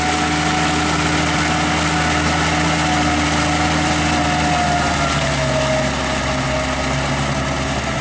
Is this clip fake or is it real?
real